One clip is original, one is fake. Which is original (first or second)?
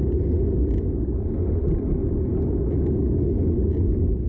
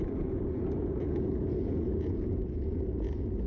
first